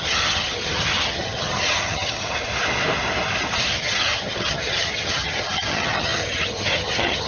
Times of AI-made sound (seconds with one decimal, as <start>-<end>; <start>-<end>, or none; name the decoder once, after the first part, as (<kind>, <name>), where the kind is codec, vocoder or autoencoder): 0.0-2.5 (vocoder, HiFi-GAN); 3.8-7.3

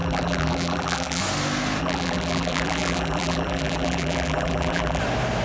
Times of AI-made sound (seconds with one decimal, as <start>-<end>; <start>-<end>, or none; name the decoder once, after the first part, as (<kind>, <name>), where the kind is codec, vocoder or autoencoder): 0.0-1.2 (vocoder, BigVGAN v2); 1.8-5.0

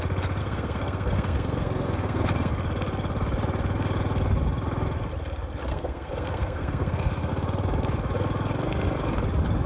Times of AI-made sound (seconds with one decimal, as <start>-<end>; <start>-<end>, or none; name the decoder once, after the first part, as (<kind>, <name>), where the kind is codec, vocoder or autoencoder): 0.4-2.5 (codec, SNAC); 5.7-7.3

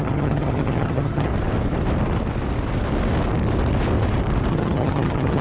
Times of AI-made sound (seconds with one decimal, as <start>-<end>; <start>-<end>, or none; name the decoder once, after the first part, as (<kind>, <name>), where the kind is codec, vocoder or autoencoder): 0.0-1.3 (vocoder, HiFi-GAN); 4.5-5.4

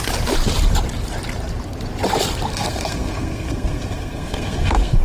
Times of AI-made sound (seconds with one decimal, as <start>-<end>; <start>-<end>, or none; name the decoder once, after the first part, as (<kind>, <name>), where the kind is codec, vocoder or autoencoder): 2.5-5.0 (codec, SNAC)

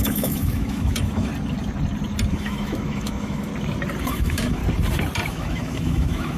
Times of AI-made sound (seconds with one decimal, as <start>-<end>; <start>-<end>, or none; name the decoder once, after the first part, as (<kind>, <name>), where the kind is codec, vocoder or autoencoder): 0.0-1.3 (autoencoder, DAC-VAE); 2.3-3.5; 4.0-4.6; 5.3-6.4

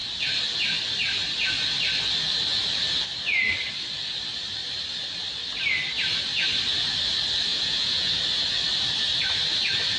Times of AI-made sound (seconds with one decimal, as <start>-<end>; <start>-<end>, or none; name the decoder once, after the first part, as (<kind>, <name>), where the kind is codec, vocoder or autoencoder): 7.5-8.1 (vocoder, Vocos)

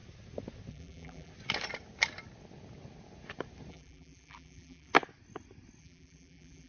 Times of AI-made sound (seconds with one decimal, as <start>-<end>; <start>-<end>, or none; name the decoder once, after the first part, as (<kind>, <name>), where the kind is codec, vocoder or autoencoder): 0.7-1.3 (vocoder, BigVGAN v2); 3.7-4.9; 5.8-6.7